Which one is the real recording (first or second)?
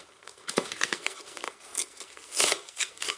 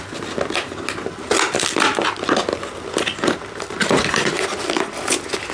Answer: second